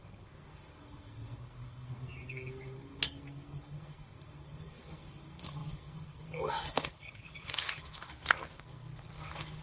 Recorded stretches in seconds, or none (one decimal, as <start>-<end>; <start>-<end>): none